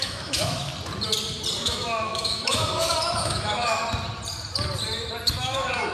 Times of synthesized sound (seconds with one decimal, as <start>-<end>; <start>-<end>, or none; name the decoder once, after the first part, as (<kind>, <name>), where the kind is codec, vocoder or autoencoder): 0.0-0.7 (autoencoder, DAC-VAE); 1.6-3.8; 5.3-5.9